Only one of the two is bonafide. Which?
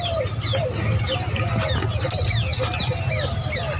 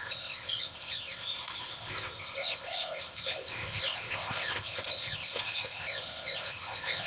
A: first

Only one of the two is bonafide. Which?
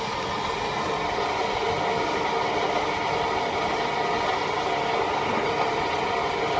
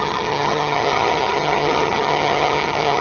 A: first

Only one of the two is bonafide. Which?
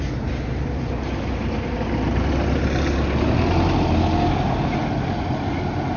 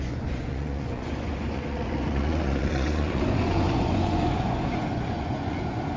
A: first